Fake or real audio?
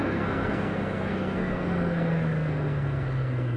fake